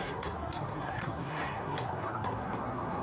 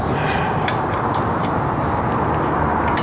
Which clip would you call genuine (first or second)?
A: second